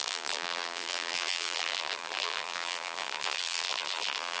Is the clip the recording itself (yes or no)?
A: no